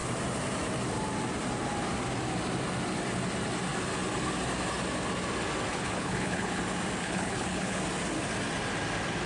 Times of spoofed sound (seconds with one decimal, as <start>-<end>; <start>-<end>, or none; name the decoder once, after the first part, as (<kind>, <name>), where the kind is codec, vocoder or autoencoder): 5.7-6.6 (codec, HILCodec); 7.0-7.8